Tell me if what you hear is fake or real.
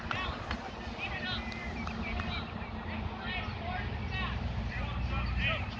real